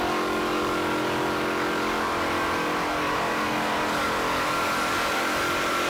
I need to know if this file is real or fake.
fake